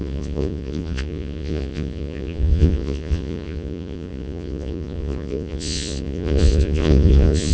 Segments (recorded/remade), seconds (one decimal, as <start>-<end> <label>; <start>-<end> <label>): 0.0-7.5 remade